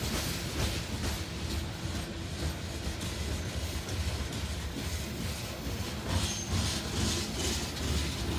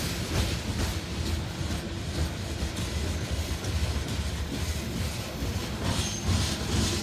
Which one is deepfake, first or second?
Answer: second